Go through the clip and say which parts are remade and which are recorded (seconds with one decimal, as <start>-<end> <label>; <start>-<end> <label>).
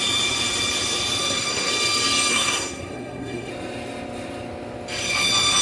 0.0-1.2 recorded; 1.2-1.7 remade; 1.7-2.3 recorded; 2.3-3.5 remade; 3.5-5.6 recorded